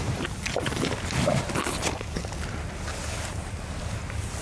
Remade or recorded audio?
recorded